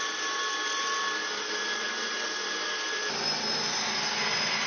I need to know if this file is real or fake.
real